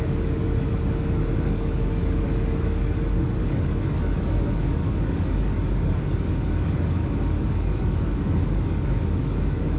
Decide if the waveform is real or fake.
fake